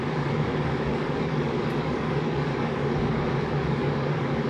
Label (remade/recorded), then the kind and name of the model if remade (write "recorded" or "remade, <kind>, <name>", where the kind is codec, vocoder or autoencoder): remade, codec, DAC